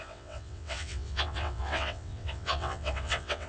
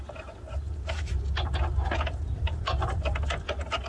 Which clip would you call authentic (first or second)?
second